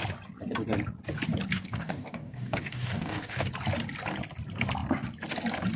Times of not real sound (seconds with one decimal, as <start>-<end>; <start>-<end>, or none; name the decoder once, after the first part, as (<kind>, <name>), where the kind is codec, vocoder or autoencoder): 1.5-3.5 (codec, DAC)